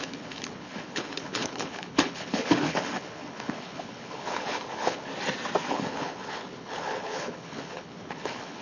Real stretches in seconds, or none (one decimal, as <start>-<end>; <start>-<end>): 5.1-5.7